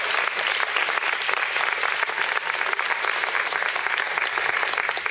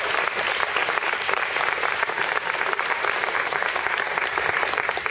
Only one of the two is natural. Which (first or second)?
first